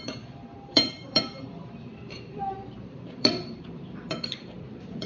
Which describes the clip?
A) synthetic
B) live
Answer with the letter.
A